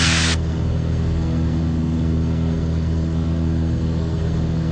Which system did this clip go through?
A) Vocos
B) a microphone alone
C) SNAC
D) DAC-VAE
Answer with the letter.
C